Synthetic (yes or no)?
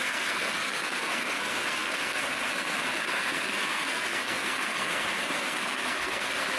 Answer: yes